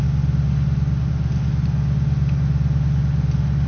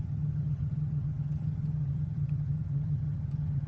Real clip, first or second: first